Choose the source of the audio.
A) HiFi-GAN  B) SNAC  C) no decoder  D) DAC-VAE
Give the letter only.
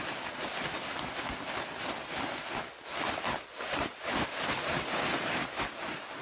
C